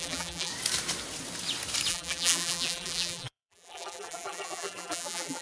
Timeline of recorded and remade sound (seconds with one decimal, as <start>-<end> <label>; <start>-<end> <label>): 0.0-0.5 remade; 0.5-1.9 recorded; 1.9-5.4 remade